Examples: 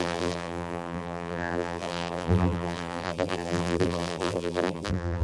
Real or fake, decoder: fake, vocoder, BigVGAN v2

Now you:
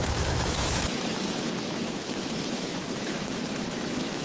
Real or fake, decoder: fake, autoencoder, DAC-VAE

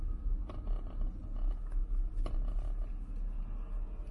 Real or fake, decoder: real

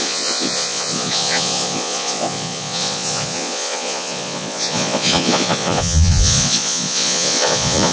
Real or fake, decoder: fake, vocoder, Vocos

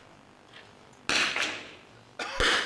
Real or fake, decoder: real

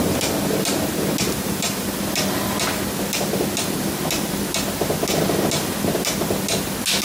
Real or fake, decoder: real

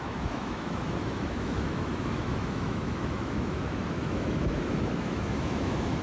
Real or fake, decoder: fake, autoencoder, DAC-VAE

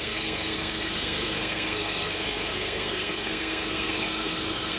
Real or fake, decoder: fake, codec, SNAC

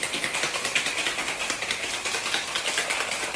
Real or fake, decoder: real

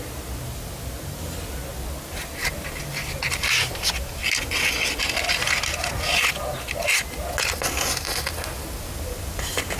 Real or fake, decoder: real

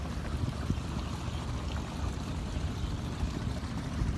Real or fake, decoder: real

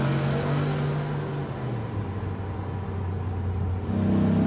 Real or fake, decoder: real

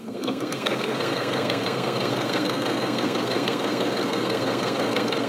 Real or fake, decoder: fake, codec, SNAC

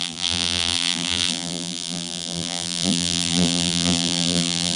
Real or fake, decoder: fake, vocoder, BigVGAN v2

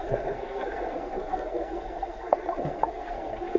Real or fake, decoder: fake, codec, SNAC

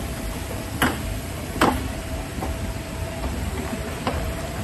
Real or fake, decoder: fake, vocoder, BigVGAN v2